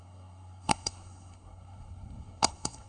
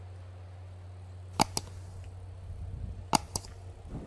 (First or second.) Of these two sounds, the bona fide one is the second